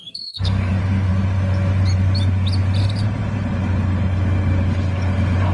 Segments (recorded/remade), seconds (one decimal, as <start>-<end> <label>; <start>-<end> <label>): 0.0-0.7 remade; 0.7-5.5 recorded